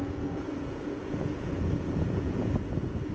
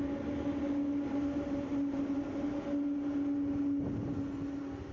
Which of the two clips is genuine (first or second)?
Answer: second